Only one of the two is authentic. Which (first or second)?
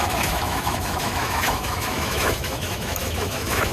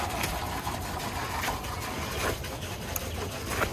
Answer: second